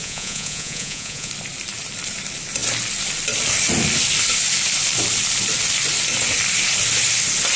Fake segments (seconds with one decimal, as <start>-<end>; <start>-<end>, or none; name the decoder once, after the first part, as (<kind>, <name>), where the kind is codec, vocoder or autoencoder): 0.0-1.3 (vocoder, Vocos)